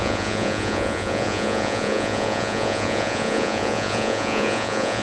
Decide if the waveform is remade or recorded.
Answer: remade